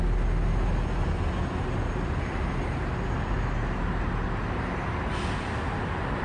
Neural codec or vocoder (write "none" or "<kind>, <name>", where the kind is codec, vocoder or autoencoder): none